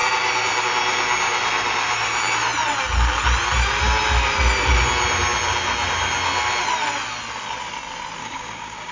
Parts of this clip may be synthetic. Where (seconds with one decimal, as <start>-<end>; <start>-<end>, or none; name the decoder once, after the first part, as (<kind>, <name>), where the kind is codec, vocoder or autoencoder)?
8.2-8.9 (codec, DAC)

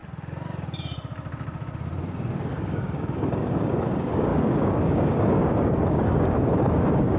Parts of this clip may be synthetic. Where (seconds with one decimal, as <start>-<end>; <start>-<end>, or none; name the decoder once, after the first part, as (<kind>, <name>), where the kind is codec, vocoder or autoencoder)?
2.5-7.2 (codec, DAC)

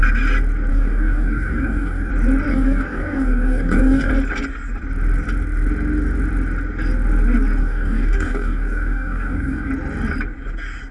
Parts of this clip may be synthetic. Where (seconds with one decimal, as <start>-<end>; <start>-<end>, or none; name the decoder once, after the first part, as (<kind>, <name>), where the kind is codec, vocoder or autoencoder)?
0.7-2.1 (codec, DAC); 2.5-4.1; 7.6-9.7

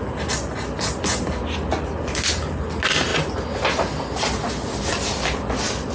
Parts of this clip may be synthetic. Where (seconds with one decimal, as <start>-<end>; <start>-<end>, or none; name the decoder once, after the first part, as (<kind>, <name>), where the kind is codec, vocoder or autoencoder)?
none

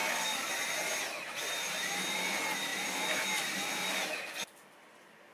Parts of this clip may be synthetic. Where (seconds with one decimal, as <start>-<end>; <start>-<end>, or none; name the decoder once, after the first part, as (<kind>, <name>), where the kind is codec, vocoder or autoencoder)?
0.0-0.5 (codec, DAC)

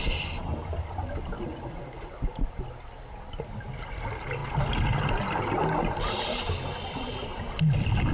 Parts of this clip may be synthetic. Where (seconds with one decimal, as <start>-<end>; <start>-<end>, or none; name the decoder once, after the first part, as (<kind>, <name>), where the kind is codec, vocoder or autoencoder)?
none

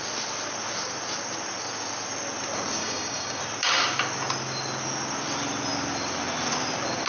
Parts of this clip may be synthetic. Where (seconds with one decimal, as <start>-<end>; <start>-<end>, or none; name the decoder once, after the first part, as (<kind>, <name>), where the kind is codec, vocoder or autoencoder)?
2.8-3.4 (codec, DAC)